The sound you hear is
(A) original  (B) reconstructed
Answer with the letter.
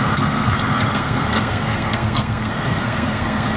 B